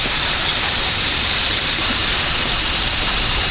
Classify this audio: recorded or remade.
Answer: remade